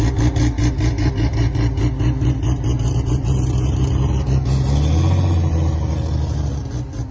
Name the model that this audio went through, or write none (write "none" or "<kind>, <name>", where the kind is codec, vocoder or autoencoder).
none